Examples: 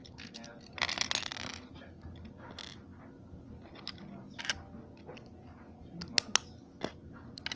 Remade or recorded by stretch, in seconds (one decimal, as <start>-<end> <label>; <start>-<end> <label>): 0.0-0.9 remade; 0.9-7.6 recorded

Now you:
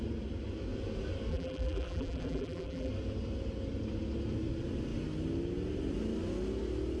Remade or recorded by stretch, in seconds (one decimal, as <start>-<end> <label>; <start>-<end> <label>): 0.0-1.3 recorded; 1.3-2.9 remade; 2.9-7.0 recorded

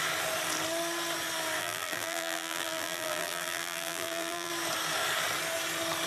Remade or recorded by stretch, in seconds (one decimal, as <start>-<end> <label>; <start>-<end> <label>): 0.0-1.6 recorded; 1.6-4.5 remade; 4.5-6.1 recorded

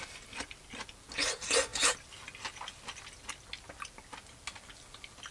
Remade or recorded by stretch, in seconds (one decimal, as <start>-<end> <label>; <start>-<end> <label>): 0.0-5.3 recorded